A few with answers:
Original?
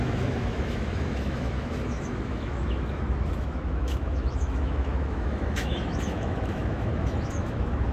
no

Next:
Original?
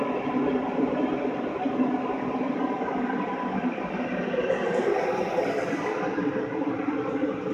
no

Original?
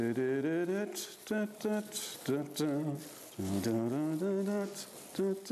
yes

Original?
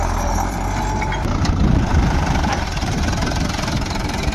no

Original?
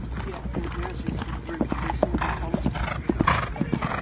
yes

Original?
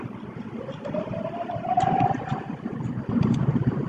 yes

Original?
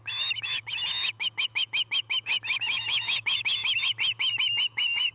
no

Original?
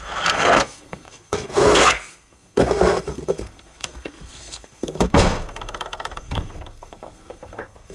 no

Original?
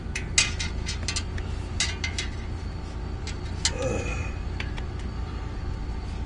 yes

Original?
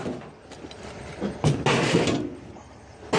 yes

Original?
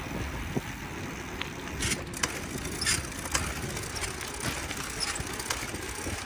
yes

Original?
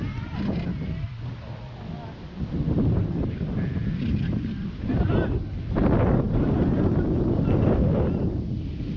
yes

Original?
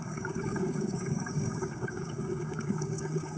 no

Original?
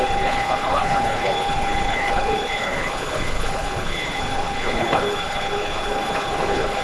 no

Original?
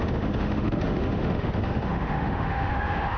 no